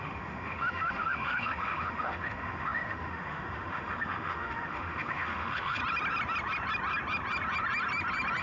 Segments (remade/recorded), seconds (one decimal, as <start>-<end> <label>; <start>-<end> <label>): 0.0-5.8 remade; 5.8-8.4 recorded